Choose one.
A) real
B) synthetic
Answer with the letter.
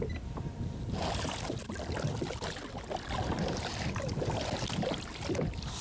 A